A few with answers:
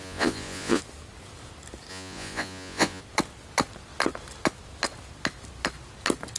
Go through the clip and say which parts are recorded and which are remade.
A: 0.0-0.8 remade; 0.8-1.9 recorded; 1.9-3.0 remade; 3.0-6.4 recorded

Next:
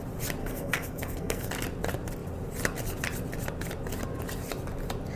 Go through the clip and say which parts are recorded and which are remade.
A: 0.0-0.4 recorded; 0.4-1.5 remade; 1.5-5.2 recorded